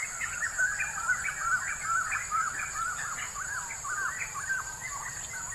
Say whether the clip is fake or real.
real